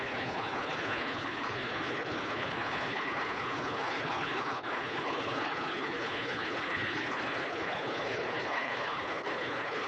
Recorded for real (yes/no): no